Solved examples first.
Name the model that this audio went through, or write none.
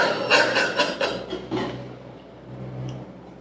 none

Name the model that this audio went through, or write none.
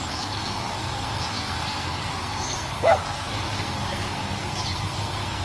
codec, SNAC